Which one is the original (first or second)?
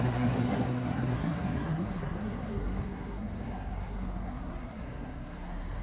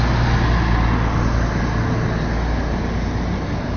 second